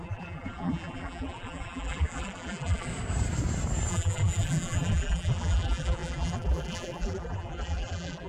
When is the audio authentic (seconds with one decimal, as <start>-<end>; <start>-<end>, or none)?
2.9-3.9